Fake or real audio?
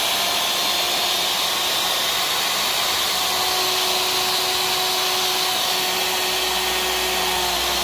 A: real